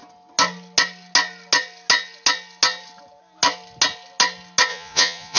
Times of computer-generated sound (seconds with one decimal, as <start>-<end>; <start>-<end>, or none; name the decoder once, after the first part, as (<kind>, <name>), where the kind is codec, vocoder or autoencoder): 4.7-5.4 (vocoder, Vocos)